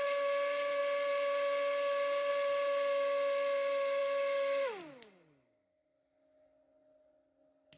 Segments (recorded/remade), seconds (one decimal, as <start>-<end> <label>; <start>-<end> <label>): 0.0-7.8 recorded